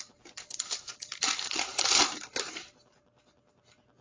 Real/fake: fake